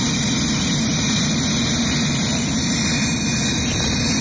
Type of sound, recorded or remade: recorded